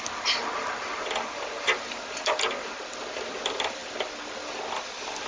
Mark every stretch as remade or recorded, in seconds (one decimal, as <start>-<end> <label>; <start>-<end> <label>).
0.0-5.3 recorded